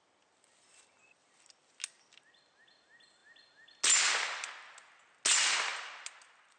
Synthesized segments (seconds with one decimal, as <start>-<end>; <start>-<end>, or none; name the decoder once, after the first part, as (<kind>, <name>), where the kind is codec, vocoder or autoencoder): none

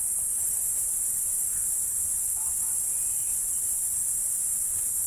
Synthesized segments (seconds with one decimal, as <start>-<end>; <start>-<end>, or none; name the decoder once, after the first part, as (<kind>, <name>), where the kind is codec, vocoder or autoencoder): 0.6-2.1 (vocoder, BigVGAN v2); 4.0-5.1

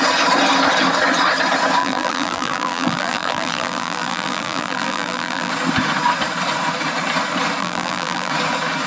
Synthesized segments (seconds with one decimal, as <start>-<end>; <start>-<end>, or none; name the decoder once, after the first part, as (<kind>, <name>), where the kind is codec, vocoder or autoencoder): 1.8-5.5 (vocoder, BigVGAN v2); 7.6-8.3

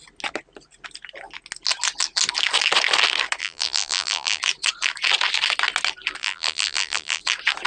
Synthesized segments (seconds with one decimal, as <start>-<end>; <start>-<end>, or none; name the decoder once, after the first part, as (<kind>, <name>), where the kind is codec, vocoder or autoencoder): 3.4-4.4 (vocoder, BigVGAN v2); 6.2-7.2

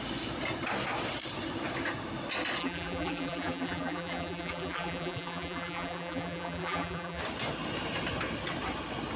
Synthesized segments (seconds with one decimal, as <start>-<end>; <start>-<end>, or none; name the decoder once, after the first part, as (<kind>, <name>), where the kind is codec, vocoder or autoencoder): 2.6-7.2 (vocoder, BigVGAN v2)

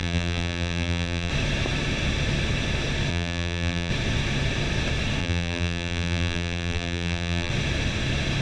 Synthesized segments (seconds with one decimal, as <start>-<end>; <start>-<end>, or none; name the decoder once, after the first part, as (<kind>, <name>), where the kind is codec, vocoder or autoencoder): 0.0-1.3 (vocoder, BigVGAN v2); 3.1-3.9; 5.2-7.5

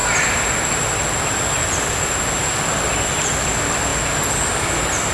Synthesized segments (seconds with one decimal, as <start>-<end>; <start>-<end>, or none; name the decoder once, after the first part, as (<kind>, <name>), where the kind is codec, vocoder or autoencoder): none